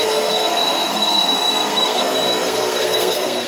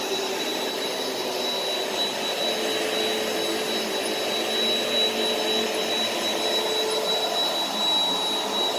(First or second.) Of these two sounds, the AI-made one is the first